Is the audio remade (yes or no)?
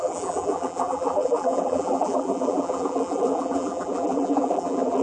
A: yes